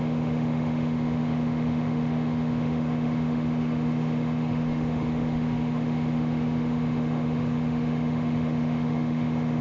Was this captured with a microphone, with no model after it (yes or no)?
no